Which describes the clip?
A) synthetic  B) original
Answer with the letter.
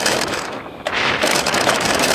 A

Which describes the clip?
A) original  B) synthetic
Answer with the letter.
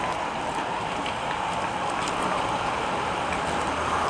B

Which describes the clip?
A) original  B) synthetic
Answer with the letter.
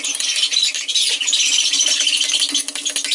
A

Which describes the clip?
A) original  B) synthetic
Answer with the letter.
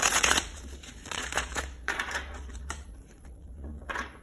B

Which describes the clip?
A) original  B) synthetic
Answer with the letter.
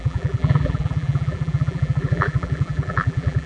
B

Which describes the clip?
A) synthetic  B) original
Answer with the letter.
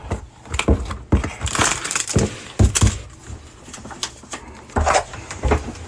B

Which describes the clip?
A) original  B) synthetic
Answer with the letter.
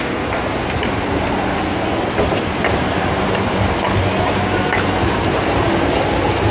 A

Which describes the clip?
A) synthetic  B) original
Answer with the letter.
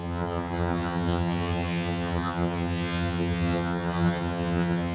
A